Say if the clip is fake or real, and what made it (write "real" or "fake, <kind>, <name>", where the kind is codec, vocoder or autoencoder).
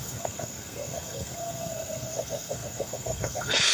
fake, codec, SNAC